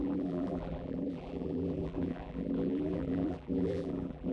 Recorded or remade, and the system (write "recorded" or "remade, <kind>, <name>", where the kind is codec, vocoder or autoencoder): remade, vocoder, BigVGAN v2